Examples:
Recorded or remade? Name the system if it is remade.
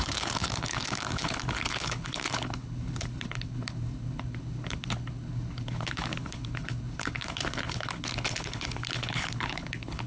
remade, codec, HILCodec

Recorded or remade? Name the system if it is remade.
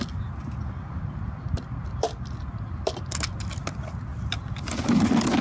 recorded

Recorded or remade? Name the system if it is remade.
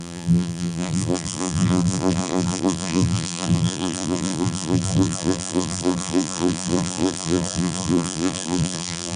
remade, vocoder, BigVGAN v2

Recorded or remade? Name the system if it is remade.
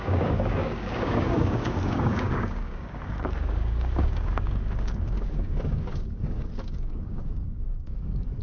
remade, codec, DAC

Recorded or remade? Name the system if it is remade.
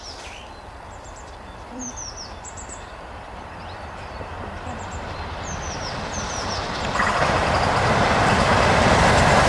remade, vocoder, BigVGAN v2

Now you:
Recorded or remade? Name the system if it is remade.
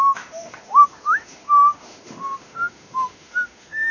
remade, autoencoder, DAC-VAE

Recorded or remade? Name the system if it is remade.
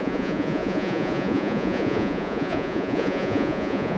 remade, vocoder, Vocos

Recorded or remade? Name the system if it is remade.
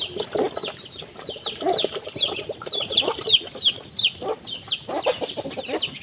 remade, vocoder, BigVGAN v2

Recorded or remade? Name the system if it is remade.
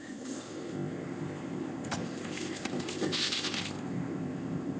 remade, codec, ZipCodec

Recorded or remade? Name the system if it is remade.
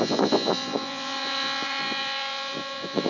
remade, vocoder, Vocos